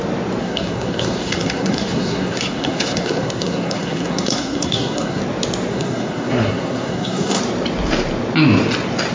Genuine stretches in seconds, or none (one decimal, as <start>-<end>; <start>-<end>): 0.0-0.4; 5.2-5.7; 7.4-9.1

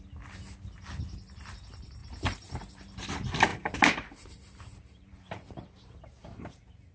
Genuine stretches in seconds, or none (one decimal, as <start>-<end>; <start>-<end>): 0.0-2.0; 3.1-3.5